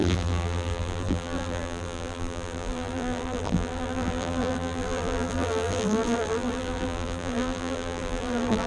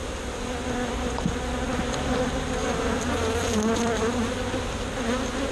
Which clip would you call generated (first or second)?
first